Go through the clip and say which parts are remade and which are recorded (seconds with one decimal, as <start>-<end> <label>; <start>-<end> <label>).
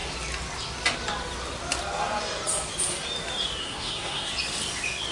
0.0-3.6 recorded; 3.6-4.3 remade; 4.3-5.1 recorded